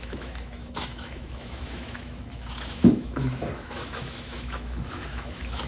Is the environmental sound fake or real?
fake